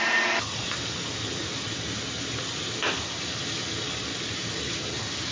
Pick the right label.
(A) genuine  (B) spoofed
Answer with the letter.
A